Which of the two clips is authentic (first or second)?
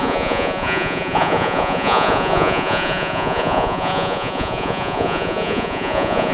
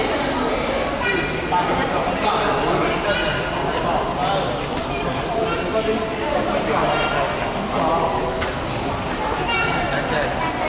second